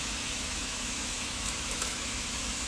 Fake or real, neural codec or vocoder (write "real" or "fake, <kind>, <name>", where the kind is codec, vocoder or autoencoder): fake, autoencoder, DAC-VAE